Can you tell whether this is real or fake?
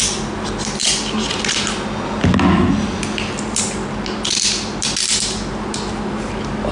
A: real